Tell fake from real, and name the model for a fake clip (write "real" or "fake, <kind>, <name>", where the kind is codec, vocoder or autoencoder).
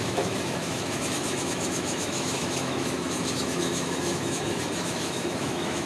fake, autoencoder, DAC-VAE